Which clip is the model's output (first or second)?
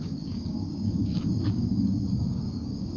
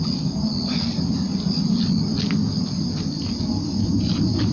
first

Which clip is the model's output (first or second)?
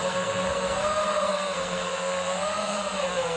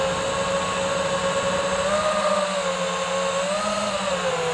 first